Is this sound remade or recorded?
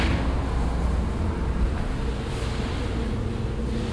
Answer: recorded